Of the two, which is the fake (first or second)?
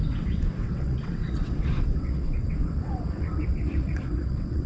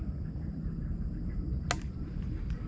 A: first